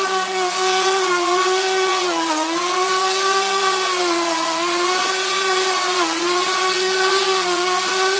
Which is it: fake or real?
fake